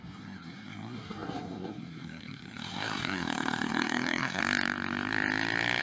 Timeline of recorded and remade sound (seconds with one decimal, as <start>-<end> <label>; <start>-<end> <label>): 0.0-4.4 remade; 4.4-5.8 recorded